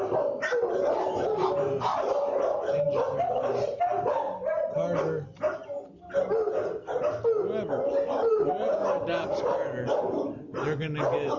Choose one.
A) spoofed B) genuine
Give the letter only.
B